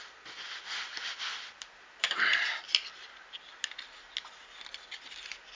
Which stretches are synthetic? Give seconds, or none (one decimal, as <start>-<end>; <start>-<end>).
none